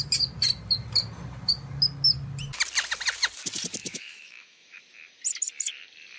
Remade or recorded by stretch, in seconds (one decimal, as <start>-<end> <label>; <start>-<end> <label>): 0.0-3.8 recorded; 3.8-4.8 remade; 4.8-6.2 recorded